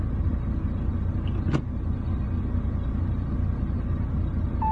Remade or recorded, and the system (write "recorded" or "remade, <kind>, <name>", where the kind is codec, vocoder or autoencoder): recorded